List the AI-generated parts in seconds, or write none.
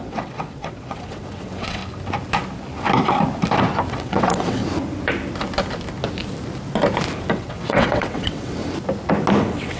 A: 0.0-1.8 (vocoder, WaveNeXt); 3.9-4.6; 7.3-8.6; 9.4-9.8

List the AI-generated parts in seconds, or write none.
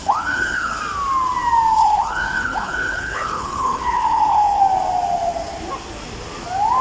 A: 0.0-0.8 (codec, HILCodec); 1.8-4.6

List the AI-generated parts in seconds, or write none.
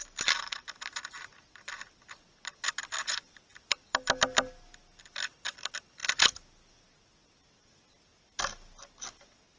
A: none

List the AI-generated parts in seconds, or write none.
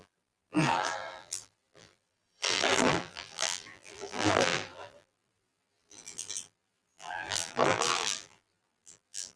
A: 0.0-9.4 (vocoder, BigVGAN v2)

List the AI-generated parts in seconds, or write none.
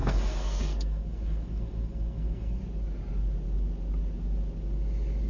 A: 0.0-2.6 (codec, SNAC)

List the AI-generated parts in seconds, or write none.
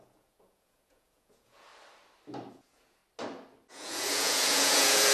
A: 0.0-1.7 (vocoder, Vocos); 2.5-3.0; 3.7-5.1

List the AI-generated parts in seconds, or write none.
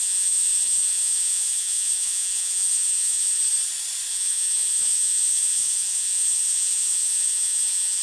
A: 0.0-3.4 (vocoder, Vocos); 4.1-8.0